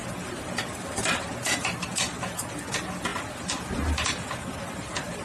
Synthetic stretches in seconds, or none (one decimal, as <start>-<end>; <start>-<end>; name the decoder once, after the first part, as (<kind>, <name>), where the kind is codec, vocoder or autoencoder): none